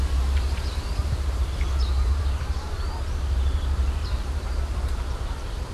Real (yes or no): no